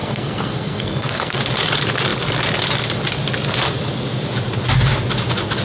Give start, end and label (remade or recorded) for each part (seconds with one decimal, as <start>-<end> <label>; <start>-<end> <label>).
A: 0.0-1.4 remade; 1.4-5.6 recorded